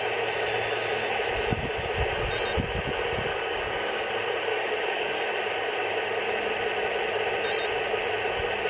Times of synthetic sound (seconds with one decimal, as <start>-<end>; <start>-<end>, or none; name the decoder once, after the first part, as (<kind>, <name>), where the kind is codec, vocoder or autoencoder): 3.3-4.1 (codec, DAC); 4.5-5.2